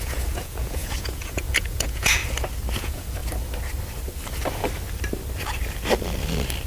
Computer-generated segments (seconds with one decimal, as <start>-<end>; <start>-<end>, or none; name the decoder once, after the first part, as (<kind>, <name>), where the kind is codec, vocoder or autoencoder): 0.0-2.2 (vocoder, Vocos); 2.8-3.2